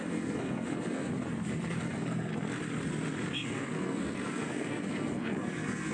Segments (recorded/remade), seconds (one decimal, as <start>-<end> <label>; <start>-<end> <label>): 0.0-1.1 remade; 1.1-1.7 recorded; 1.7-2.3 remade; 2.3-3.3 recorded; 3.3-5.9 remade

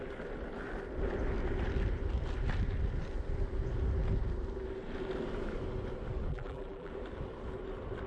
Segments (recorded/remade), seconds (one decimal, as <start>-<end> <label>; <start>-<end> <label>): 0.0-6.3 recorded; 6.3-6.9 remade; 6.9-8.1 recorded

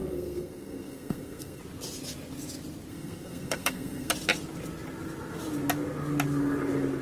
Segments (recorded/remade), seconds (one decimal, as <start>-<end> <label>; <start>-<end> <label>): 0.0-1.6 remade; 1.6-2.9 recorded; 2.9-4.1 remade; 4.1-7.0 recorded

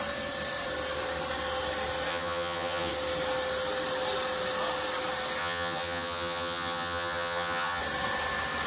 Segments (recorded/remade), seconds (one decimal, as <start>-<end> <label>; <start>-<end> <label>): 0.0-2.1 recorded; 2.1-2.9 remade; 2.9-5.4 recorded; 5.4-7.8 remade; 7.8-8.7 recorded

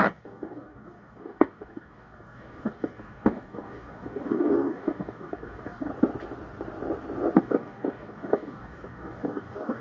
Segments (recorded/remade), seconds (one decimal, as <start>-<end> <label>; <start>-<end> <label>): 0.0-5.9 remade; 5.9-7.4 recorded; 7.4-9.8 remade

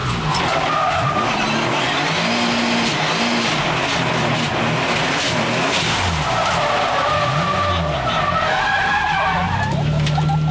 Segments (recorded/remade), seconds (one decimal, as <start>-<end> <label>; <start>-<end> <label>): 0.0-10.5 recorded

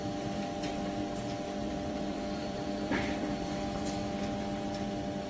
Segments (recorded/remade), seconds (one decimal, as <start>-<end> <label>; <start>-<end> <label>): 0.0-1.6 recorded; 1.6-3.3 remade; 3.3-5.3 recorded